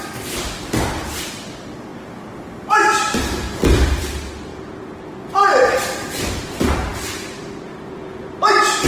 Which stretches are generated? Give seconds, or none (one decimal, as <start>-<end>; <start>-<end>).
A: 4.5-5.1